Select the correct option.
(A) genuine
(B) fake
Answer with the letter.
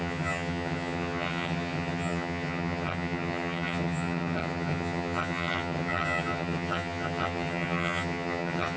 B